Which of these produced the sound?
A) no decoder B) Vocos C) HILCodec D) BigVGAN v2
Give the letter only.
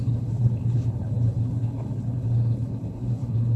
C